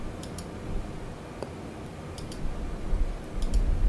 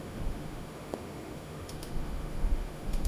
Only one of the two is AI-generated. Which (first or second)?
second